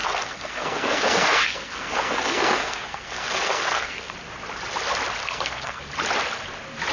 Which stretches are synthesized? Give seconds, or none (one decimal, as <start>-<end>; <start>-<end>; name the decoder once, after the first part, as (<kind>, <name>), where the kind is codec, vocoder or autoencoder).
0.0-4.1 (codec, SNAC); 5.2-5.8